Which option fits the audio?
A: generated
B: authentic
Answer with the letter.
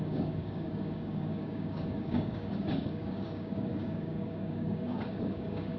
A